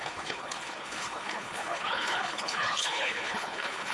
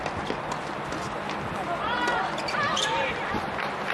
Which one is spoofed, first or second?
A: first